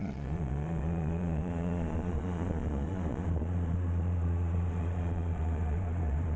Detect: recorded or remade remade